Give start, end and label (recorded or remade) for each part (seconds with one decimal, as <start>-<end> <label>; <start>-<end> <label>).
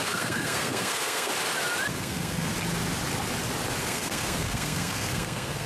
0.0-1.3 remade; 1.3-1.9 recorded; 1.9-2.5 remade; 2.5-3.8 recorded; 3.8-5.7 remade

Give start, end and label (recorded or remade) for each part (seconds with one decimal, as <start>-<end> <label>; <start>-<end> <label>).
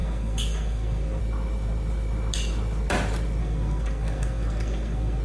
0.0-1.2 remade; 1.2-3.4 recorded; 3.4-5.2 remade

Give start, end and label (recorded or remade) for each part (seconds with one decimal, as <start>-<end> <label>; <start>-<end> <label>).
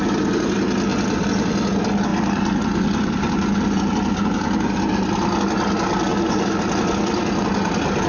0.0-0.9 recorded; 0.9-1.7 remade; 1.7-2.1 recorded; 2.1-3.8 remade; 3.8-6.1 recorded; 6.1-7.2 remade; 7.2-8.1 recorded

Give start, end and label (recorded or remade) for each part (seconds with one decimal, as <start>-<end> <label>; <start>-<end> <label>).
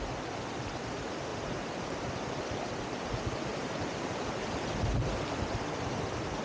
0.0-1.3 recorded; 1.3-2.1 remade; 2.1-3.5 recorded; 3.5-4.3 remade; 4.3-6.4 recorded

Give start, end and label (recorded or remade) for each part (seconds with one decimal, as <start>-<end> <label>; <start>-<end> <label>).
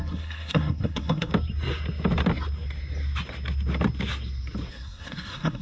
0.0-1.3 remade; 1.3-4.7 recorded; 4.7-5.6 remade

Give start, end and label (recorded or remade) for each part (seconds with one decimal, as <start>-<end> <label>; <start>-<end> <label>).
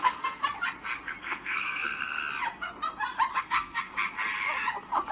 0.0-0.4 remade; 0.4-1.2 recorded; 1.2-2.2 remade; 2.2-3.4 recorded; 3.4-3.9 remade; 3.9-5.1 recorded